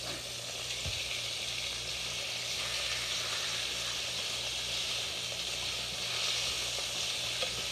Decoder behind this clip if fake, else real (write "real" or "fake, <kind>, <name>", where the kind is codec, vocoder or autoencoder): real